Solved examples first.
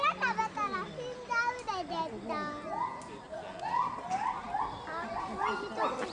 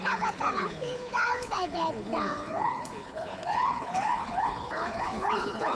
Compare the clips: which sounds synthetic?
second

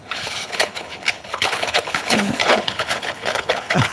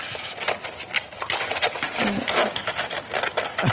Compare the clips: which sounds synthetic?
first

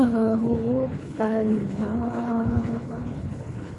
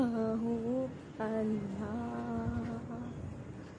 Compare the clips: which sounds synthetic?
first